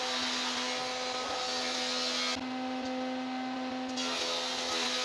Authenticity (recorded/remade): recorded